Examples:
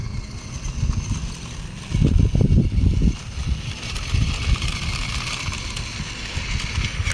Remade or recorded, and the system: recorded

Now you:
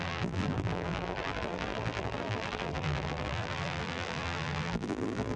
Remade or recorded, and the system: remade, vocoder, BigVGAN v2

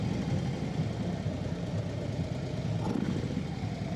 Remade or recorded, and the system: recorded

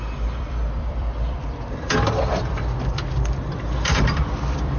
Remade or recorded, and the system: remade, vocoder, BigVGAN v2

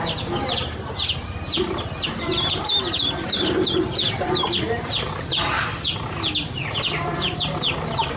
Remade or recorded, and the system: recorded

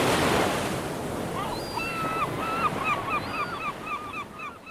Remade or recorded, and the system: recorded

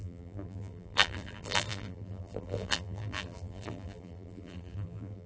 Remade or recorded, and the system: remade, vocoder, BigVGAN v2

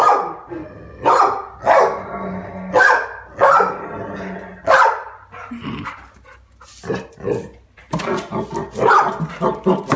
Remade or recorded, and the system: recorded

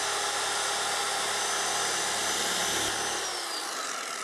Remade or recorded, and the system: recorded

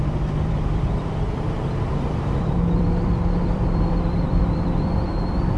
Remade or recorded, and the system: remade, vocoder, BigVGAN v2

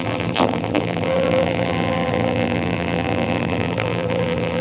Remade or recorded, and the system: remade, vocoder, BigVGAN v2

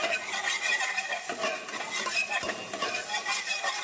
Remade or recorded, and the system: recorded